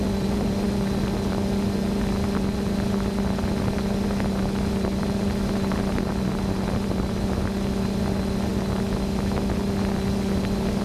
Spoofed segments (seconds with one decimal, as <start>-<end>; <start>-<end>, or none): none